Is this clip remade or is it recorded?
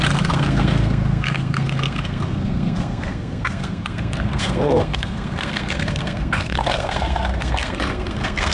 remade